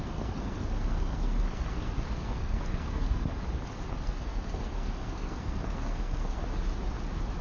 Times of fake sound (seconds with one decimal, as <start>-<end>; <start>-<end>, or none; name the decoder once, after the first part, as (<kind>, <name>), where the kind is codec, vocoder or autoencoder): 0.0-3.3 (codec, SNAC); 3.9-6.4